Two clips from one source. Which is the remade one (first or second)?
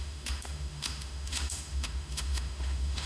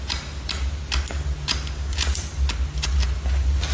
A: first